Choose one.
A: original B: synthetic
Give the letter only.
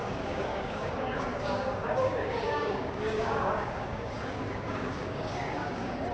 B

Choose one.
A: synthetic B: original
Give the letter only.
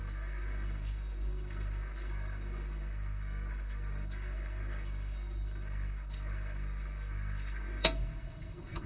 A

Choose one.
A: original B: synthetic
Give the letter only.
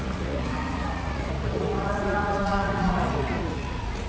B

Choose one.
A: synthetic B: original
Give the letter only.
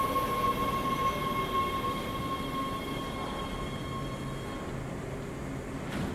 B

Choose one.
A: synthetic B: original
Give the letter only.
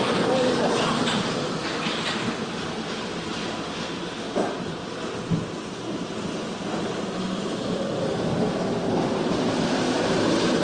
B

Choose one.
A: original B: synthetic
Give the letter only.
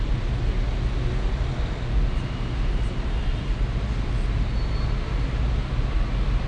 A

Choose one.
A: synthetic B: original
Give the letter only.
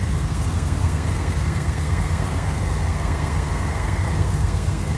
A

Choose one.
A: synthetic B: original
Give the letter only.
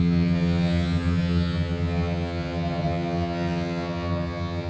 A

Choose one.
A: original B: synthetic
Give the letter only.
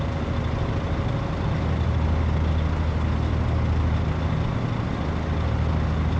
A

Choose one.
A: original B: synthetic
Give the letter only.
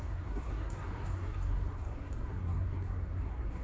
B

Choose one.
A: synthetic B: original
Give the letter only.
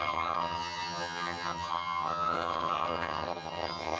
A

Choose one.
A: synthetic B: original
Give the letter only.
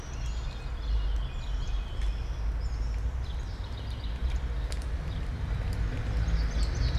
B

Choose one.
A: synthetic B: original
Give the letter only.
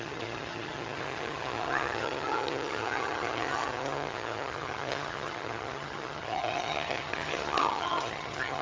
A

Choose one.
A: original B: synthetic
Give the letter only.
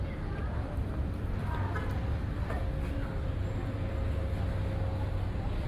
A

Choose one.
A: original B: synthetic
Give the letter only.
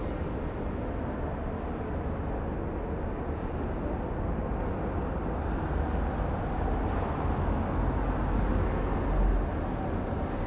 A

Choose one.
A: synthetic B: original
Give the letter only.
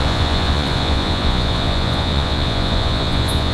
A